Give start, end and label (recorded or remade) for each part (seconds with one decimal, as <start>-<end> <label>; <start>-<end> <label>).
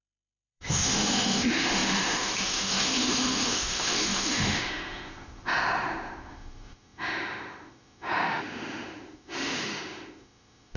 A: 0.0-10.8 remade